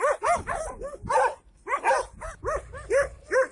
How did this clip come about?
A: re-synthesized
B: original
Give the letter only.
B